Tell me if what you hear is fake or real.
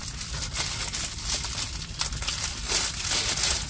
real